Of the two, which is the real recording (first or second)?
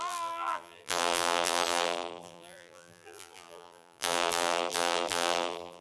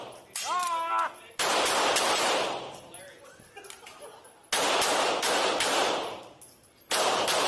second